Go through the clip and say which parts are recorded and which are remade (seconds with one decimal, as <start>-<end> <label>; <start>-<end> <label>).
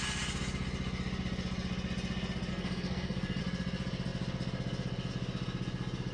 0.0-2.5 recorded; 2.5-3.4 remade; 3.4-6.1 recorded